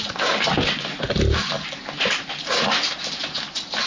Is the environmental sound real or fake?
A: real